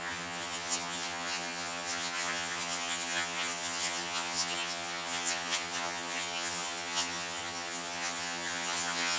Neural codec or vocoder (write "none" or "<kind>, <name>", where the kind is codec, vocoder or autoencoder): vocoder, HiFi-GAN